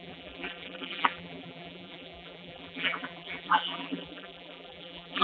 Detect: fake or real fake